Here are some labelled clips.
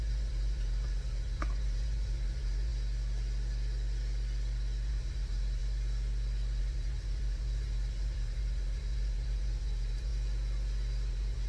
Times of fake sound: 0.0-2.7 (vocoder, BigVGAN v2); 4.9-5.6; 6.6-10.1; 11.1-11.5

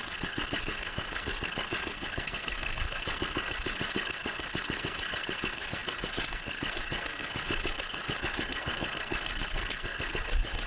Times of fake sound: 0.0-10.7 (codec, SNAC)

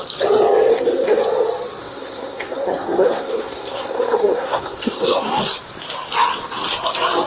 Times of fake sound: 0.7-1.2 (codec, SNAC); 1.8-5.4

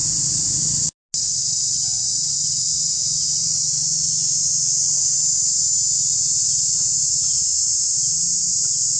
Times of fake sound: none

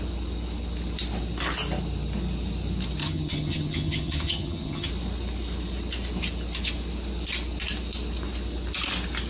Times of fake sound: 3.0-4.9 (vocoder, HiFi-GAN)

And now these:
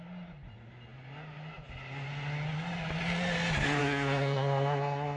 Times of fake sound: 3.8-5.2 (codec, SNAC)